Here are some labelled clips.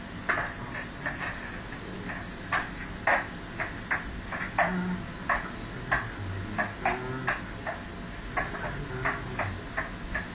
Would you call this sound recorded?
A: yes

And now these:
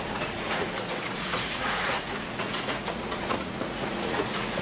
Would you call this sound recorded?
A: no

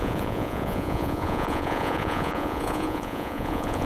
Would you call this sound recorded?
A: no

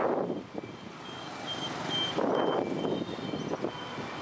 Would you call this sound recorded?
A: yes